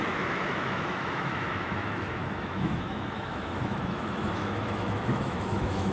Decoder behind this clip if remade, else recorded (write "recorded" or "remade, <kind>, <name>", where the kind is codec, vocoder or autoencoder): remade, autoencoder, DAC-VAE